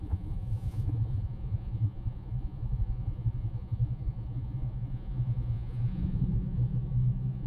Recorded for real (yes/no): no